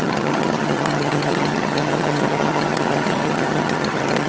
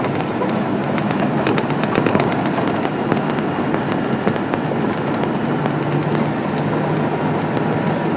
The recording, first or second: second